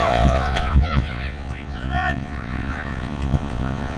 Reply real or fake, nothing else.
fake